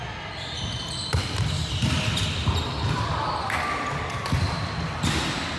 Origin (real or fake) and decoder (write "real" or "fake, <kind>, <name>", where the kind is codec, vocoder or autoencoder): real